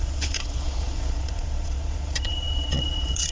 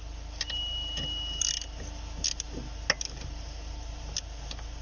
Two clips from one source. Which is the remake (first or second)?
first